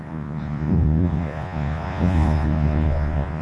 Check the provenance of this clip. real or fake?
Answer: fake